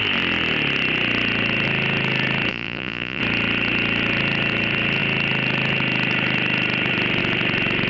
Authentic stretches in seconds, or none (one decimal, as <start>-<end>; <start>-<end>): 0.0-2.5; 3.2-7.9